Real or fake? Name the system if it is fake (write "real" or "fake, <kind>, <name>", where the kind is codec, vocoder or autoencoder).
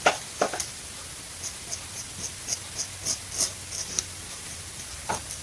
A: real